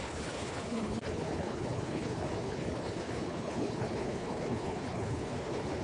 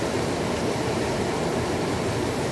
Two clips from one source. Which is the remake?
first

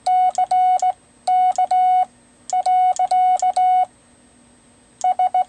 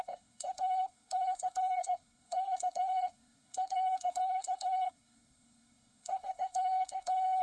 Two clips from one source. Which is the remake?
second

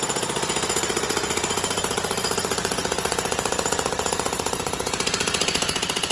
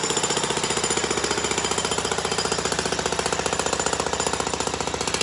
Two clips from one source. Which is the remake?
first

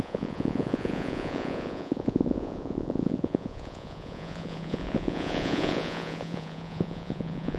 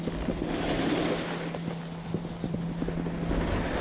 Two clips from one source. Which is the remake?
first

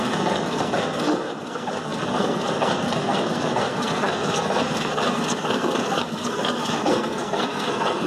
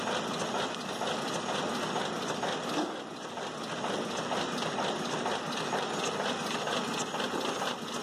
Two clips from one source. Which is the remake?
first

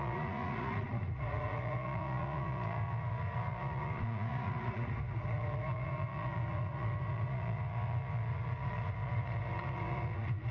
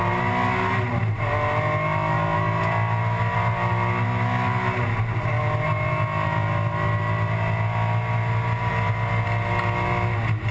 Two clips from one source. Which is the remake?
first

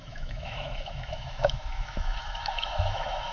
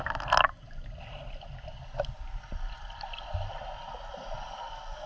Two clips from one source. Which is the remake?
first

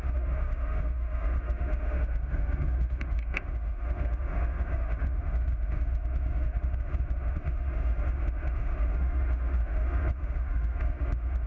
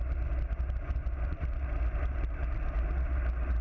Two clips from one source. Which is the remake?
first